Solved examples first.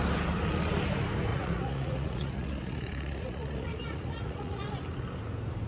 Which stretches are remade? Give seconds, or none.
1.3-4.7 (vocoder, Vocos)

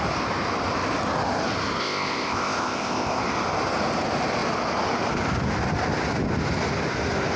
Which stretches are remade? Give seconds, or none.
1.8-3.2 (codec, ZipCodec)

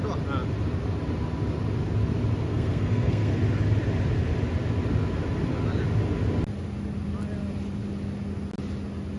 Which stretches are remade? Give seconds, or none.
2.5-3.3 (codec, SNAC)

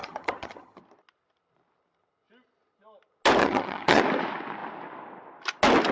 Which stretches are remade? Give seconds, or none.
0.0-0.8 (vocoder, HiFi-GAN); 3.4-4.0

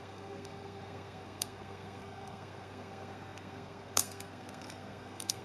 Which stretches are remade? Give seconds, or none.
0.0-5.4 (codec, SNAC)